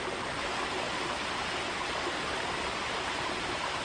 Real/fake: real